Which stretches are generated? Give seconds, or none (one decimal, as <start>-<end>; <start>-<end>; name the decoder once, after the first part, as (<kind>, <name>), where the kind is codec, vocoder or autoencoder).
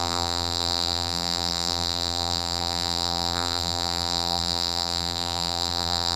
0.0-6.2 (vocoder, BigVGAN v2)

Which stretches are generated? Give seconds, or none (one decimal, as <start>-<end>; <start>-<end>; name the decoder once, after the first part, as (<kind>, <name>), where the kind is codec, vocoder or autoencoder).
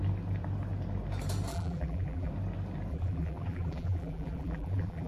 1.5-2.3 (vocoder, BigVGAN v2); 2.9-5.1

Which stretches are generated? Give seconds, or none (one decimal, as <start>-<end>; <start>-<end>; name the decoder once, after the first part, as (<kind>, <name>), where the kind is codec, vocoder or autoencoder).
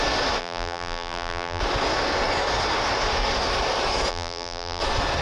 0.4-1.6 (vocoder, BigVGAN v2); 4.1-4.8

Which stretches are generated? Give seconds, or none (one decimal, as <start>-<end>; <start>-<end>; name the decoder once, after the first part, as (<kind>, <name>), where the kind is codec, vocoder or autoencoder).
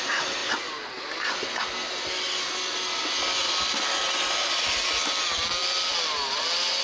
3.4-4.8 (vocoder, BigVGAN v2)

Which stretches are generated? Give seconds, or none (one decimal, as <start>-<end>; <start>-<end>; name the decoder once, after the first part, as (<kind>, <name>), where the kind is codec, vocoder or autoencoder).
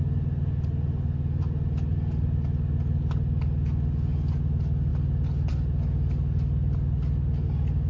none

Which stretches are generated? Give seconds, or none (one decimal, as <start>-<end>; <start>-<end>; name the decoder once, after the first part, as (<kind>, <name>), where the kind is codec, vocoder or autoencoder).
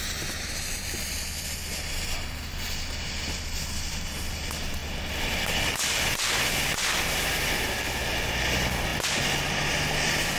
none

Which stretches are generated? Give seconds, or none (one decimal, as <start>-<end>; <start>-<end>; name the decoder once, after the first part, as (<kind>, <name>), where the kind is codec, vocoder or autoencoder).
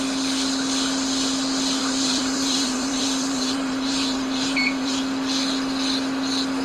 1.8-5.0 (vocoder, BigVGAN v2)